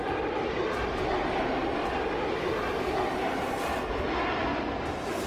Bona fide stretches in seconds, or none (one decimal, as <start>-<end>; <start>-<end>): 0.0-5.3